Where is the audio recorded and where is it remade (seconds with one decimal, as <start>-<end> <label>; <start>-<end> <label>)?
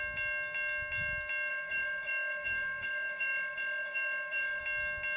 0.0-1.5 recorded; 1.5-4.6 remade; 4.6-5.2 recorded